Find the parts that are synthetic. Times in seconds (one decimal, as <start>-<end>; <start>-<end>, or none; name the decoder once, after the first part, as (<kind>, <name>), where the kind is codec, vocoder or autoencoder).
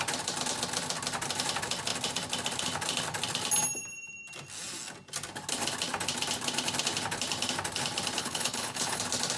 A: 8.2-9.0 (codec, HILCodec)